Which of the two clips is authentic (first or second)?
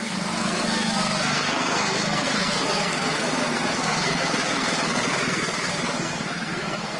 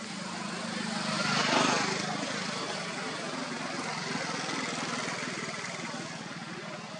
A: second